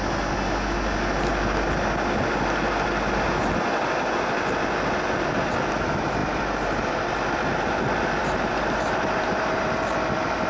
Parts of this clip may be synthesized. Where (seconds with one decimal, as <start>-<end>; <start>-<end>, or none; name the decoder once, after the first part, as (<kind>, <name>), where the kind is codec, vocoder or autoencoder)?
6.2-6.8 (vocoder, BigVGAN v2); 8.2-9.7